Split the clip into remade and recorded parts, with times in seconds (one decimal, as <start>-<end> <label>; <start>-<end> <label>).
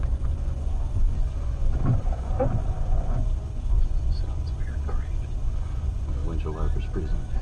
0.0-6.2 remade; 6.2-7.0 recorded; 7.0-7.4 remade